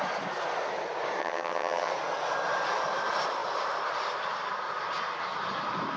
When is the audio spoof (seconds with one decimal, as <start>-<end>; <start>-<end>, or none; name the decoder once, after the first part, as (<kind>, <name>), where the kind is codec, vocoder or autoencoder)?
1.2-1.9 (vocoder, HiFi-GAN)